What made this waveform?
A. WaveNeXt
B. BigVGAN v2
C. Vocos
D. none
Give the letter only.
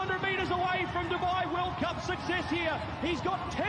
D